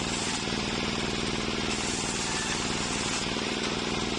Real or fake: real